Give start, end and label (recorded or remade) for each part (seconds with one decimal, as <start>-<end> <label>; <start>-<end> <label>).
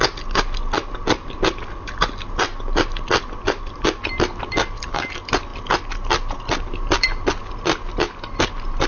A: 0.0-8.9 recorded